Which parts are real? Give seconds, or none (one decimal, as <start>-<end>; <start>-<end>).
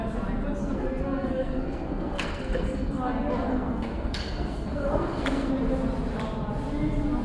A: 0.0-0.6; 3.0-3.5; 5.5-7.2